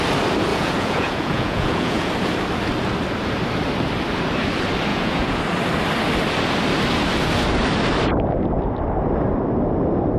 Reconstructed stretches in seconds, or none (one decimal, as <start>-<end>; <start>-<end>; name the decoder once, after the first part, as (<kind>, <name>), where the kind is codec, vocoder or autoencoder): 0.5-2.1 (vocoder, Vocos); 4.9-5.4